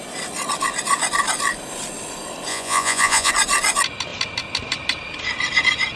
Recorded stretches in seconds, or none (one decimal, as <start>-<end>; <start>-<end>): 0.0-2.5; 3.3-6.0